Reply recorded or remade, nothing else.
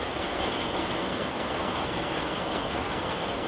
remade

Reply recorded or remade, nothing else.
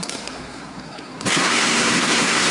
remade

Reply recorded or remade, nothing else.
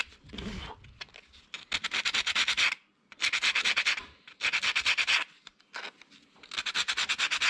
recorded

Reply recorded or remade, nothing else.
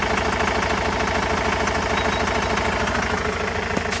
recorded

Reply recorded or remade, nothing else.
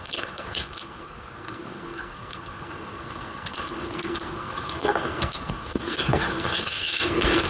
remade